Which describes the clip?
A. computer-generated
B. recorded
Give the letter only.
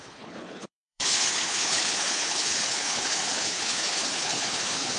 A